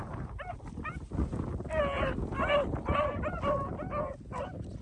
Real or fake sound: real